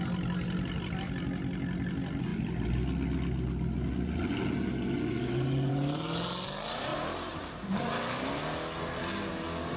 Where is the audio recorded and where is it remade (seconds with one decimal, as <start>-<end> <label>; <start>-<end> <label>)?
0.0-6.9 recorded; 6.9-7.7 remade; 7.7-9.8 recorded